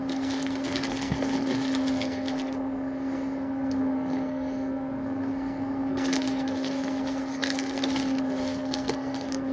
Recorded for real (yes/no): no